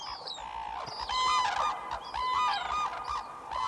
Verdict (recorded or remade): recorded